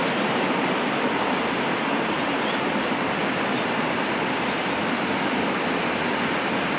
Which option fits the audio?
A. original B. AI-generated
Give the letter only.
A